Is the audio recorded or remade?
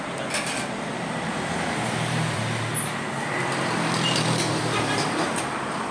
remade